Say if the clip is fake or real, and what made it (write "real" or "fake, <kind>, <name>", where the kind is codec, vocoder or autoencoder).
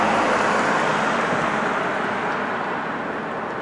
real